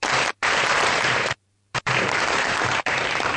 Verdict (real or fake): fake